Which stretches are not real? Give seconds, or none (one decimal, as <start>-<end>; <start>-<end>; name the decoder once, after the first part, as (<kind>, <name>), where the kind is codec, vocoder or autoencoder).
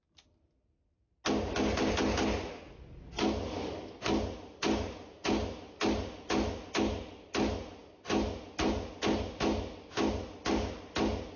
none